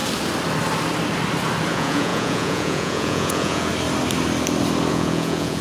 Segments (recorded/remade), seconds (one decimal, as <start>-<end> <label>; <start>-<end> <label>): 0.0-1.7 recorded; 1.7-3.7 remade; 3.7-4.9 recorded; 4.9-5.6 remade